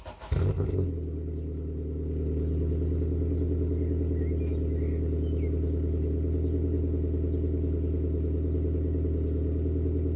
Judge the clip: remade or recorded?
recorded